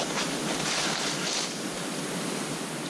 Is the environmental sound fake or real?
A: real